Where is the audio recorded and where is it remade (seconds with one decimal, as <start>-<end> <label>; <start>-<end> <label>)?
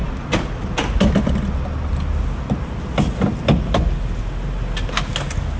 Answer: 0.0-5.6 recorded